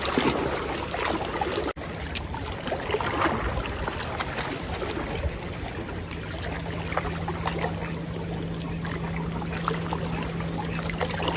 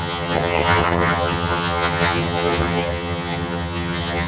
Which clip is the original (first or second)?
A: first